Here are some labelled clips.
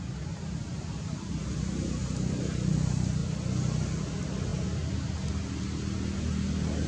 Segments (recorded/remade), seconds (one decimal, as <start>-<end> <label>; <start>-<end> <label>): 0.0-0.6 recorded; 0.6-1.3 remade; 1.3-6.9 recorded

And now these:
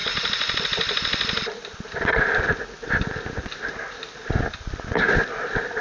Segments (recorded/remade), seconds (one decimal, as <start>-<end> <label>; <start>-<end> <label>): 0.0-5.8 recorded

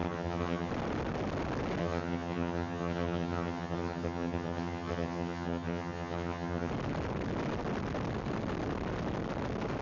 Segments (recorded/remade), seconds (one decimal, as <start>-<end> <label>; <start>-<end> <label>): 0.0-0.7 remade; 0.7-1.8 recorded; 1.8-6.7 remade; 6.7-9.8 recorded

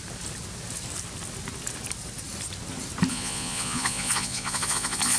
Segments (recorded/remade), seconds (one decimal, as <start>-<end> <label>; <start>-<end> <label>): 0.0-3.1 recorded; 3.1-5.2 remade

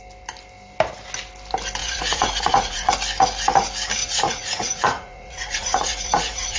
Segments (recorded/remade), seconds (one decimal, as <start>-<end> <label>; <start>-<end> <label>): 0.0-1.8 recorded; 1.8-2.9 remade; 2.9-4.0 recorded; 4.0-6.6 remade

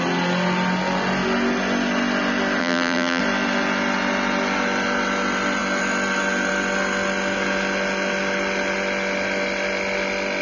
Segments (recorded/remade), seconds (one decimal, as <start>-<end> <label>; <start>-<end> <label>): 0.0-2.6 recorded; 2.6-3.2 remade; 3.2-10.4 recorded